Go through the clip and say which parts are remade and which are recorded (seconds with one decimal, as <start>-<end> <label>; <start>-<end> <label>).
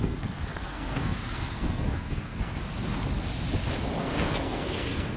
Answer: 0.0-2.6 remade; 2.6-4.0 recorded; 4.0-5.2 remade